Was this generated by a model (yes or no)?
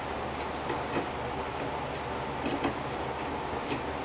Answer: no